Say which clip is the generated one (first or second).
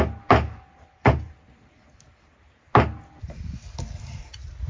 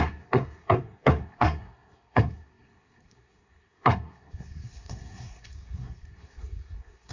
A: second